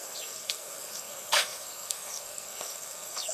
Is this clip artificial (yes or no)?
yes